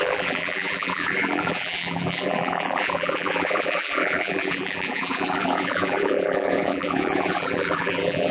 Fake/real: fake